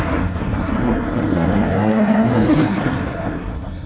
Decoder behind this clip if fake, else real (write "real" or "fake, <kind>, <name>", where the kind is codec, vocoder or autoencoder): fake, codec, SNAC